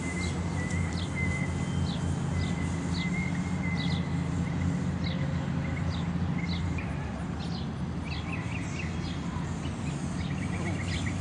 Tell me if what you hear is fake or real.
real